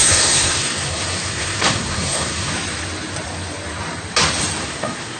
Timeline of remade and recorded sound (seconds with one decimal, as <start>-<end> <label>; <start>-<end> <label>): 0.0-2.5 remade; 2.5-4.6 recorded; 4.6-5.2 remade